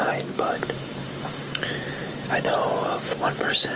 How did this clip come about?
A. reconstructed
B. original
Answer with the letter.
A